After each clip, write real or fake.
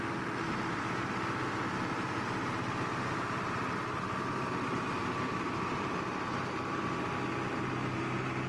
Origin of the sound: real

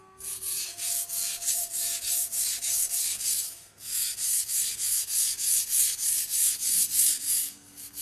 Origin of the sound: fake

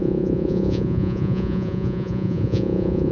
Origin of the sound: fake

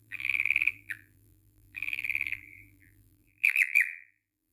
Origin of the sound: fake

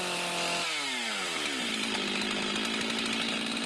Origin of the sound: real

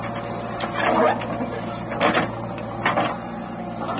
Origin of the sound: real